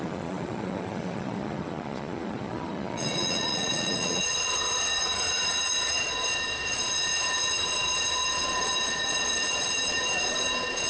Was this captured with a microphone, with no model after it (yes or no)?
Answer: no